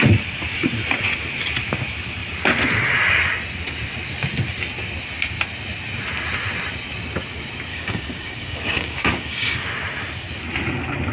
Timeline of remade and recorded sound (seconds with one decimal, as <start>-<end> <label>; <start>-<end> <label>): 0.0-7.7 recorded; 7.7-9.6 remade; 9.6-11.1 recorded